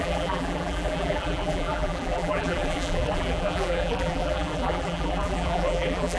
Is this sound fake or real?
fake